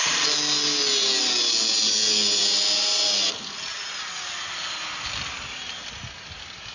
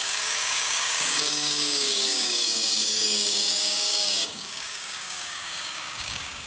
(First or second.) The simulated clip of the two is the second